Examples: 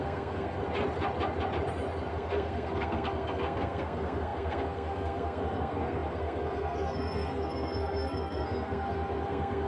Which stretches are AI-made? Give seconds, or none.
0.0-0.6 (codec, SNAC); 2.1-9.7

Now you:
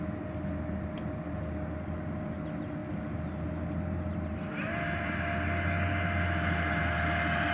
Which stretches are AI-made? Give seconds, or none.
2.8-4.4 (vocoder, BigVGAN v2)

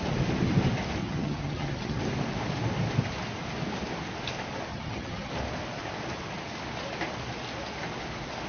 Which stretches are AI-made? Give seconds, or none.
1.0-2.0 (vocoder, HiFi-GAN); 4.7-5.3

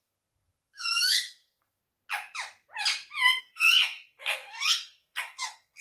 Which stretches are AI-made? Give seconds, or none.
0.0-1.8 (codec, SNAC); 3.4-5.8